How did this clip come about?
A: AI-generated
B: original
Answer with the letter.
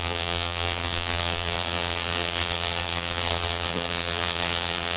A